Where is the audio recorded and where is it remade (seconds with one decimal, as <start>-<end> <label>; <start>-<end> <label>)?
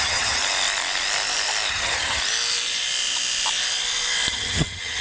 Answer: 0.0-0.4 remade; 0.4-1.7 recorded; 1.7-2.2 remade; 2.2-4.3 recorded; 4.3-5.0 remade